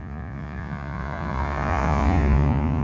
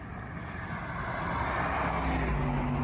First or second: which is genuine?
second